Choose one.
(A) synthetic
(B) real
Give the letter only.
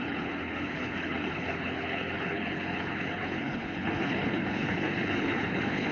A